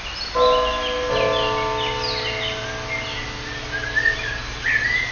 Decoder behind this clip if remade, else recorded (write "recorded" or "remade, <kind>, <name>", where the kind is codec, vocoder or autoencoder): recorded